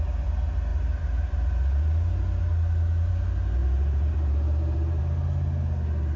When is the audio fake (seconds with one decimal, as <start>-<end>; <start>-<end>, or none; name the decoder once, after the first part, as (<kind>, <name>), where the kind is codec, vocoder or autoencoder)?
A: 3.6-5.0 (vocoder, BigVGAN v2)